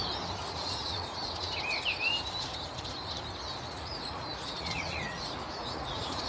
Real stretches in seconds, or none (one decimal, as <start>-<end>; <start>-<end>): 0.0-0.4; 1.5-3.6